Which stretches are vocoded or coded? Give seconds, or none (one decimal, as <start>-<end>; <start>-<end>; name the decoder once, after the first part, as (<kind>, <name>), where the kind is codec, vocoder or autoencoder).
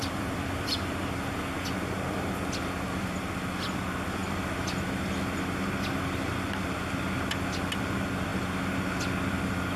0.0-1.4 (vocoder, BigVGAN v2)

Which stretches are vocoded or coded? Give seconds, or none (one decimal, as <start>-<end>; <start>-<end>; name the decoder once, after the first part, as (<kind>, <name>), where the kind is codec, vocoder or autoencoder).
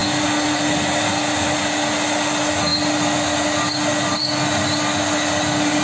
none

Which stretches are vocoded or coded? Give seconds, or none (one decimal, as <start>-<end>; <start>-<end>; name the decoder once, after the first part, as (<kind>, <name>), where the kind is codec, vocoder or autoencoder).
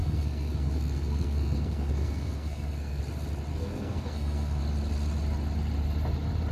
0.0-3.0 (codec, SNAC); 3.5-4.6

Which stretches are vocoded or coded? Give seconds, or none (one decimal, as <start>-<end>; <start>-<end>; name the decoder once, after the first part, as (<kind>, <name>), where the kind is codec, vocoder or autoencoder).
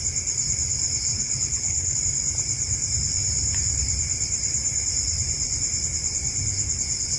1.1-2.0 (codec, HILCodec)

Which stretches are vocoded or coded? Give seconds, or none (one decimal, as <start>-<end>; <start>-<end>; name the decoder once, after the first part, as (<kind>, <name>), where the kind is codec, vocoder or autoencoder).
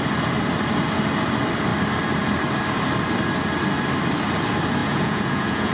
4.8-5.7 (vocoder, Vocos)